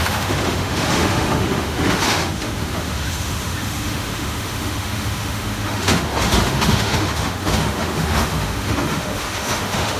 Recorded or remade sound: remade